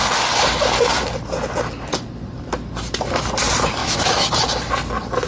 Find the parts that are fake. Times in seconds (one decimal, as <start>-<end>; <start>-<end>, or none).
3.8-4.3